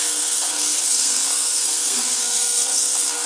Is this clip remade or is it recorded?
remade